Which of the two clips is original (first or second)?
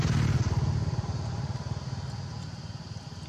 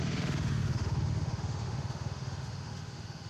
first